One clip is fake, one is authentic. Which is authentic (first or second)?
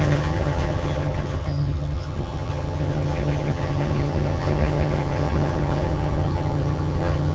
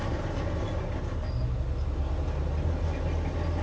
second